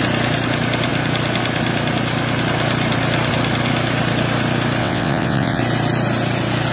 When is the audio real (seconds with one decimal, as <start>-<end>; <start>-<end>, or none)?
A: 0.0-4.8; 5.6-6.7